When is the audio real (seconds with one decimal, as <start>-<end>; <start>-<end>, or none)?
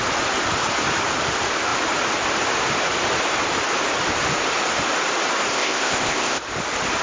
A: 0.0-5.5; 6.4-7.0